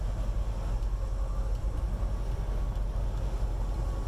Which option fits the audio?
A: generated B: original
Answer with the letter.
B